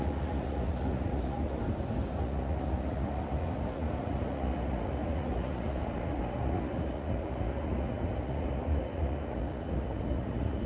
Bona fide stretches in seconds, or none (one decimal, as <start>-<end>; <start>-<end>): 1.6-2.2